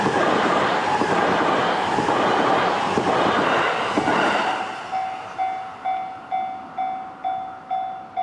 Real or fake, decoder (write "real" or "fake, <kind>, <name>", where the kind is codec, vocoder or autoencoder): real